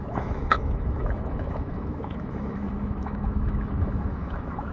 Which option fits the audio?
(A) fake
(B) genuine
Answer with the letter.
A